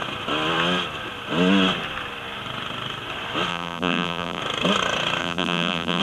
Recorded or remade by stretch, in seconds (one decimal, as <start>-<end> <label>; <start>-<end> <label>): 0.0-3.5 recorded; 3.5-4.4 remade; 4.4-5.2 recorded; 5.2-6.0 remade